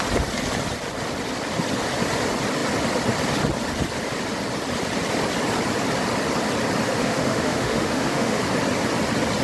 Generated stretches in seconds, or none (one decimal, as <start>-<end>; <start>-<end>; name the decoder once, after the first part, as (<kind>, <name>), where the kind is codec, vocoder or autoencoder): 6.9-8.4 (autoencoder, DAC-VAE)